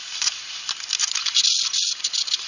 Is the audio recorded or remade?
recorded